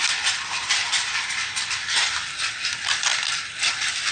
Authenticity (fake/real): real